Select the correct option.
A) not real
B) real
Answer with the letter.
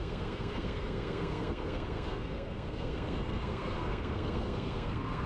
A